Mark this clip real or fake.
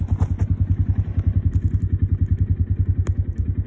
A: real